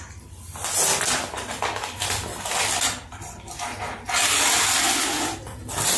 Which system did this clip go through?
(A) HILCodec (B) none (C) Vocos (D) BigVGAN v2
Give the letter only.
B